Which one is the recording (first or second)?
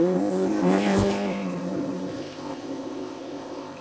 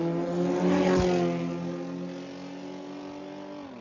second